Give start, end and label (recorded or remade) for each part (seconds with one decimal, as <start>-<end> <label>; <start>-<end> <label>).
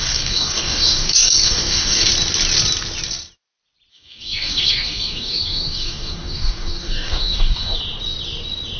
0.0-2.1 remade; 2.1-3.9 recorded; 3.9-7.8 remade; 7.8-8.8 recorded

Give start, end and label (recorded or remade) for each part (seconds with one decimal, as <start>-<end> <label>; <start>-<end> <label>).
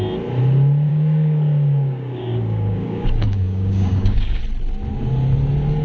0.0-0.9 recorded; 0.9-4.4 remade; 4.4-5.8 recorded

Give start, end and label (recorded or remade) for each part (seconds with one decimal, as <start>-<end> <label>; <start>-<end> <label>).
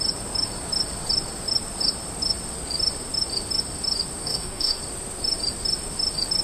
0.0-4.2 recorded; 4.2-4.8 remade; 4.8-6.4 recorded